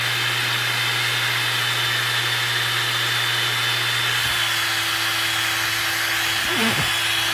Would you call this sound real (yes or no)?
yes